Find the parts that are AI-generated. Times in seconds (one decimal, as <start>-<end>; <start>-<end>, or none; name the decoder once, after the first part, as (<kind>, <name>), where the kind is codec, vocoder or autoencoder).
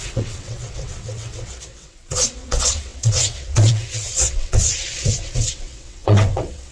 0.0-6.7 (vocoder, WaveNeXt)